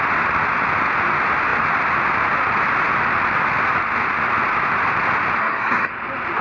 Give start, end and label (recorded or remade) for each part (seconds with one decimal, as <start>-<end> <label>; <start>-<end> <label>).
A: 0.0-5.4 recorded; 5.4-5.9 remade; 5.9-6.4 recorded